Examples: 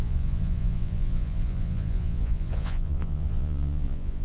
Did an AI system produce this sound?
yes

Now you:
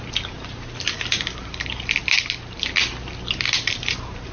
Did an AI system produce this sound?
no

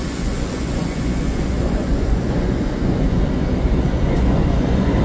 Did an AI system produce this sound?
yes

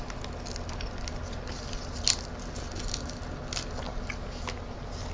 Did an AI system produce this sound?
no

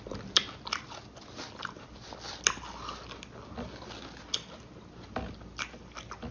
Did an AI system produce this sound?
no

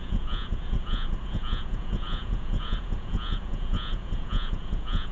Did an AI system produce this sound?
yes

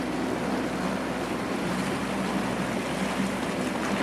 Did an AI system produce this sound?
no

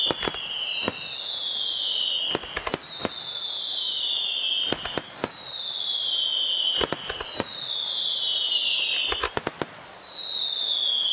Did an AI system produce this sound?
no